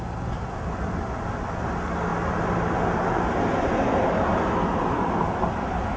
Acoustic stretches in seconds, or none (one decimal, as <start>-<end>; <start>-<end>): 0.0-6.0